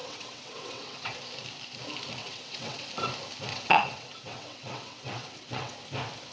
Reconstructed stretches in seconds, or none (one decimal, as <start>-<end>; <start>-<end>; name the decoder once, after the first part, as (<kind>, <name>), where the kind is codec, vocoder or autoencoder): 0.0-1.2 (vocoder, WaveNeXt); 2.2-2.9; 3.5-5.7